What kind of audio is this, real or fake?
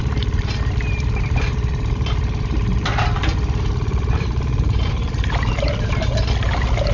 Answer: fake